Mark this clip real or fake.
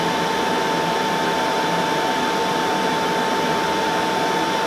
real